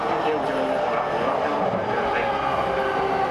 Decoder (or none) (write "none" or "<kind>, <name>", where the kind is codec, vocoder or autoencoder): none